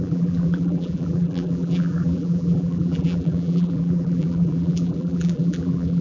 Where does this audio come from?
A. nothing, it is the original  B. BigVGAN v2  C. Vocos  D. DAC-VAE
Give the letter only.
B